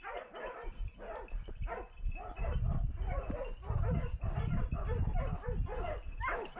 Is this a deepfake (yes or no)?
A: no